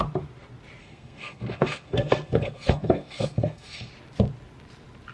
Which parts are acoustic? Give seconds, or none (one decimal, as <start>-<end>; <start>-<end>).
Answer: 0.0-0.8; 3.9-5.1